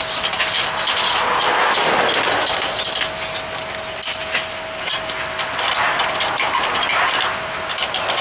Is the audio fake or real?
real